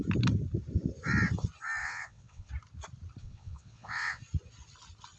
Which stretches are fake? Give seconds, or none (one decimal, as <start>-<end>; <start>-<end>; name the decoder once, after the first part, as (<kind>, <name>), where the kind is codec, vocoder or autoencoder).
1.8-2.5 (vocoder, WaveNeXt); 3.2-4.2